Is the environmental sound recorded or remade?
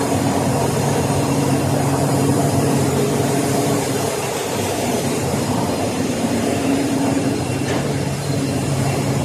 remade